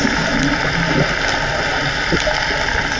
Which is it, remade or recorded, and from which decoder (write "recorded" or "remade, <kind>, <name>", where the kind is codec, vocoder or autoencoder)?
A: recorded